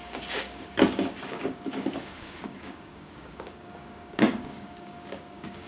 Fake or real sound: fake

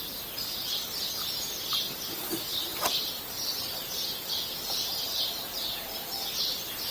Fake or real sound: real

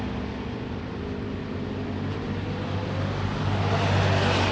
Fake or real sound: real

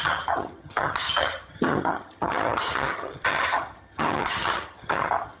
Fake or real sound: fake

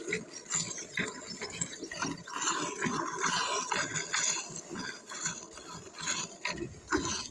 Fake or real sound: real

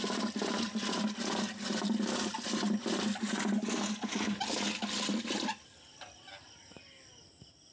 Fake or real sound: real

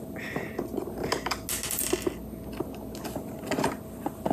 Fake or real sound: real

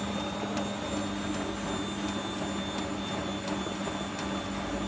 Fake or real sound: real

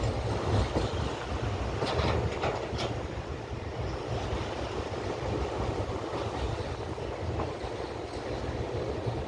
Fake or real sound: real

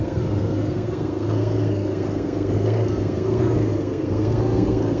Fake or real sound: fake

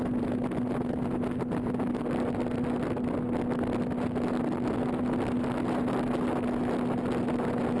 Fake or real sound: real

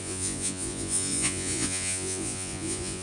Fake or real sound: fake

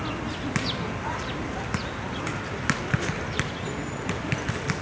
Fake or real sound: real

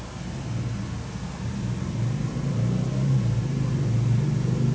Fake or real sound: real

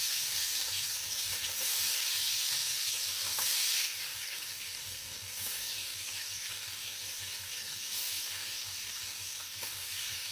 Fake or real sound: fake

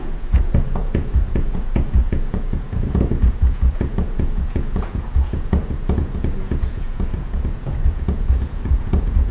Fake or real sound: fake